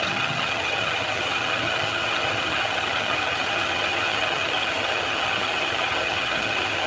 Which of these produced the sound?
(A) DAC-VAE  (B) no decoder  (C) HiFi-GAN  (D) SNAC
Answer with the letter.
C